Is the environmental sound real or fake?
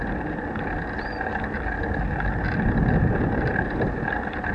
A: real